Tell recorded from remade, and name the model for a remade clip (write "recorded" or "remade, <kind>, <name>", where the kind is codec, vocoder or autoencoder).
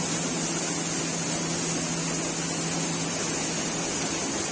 recorded